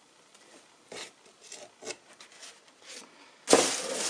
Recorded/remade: recorded